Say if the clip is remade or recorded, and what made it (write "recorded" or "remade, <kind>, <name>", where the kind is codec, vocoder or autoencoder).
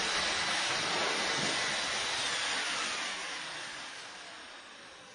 recorded